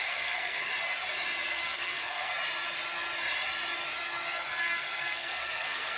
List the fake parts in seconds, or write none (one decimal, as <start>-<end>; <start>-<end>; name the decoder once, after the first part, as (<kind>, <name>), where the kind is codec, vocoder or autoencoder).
0.0-0.7 (codec, SNAC); 1.5-2.3; 4.6-6.0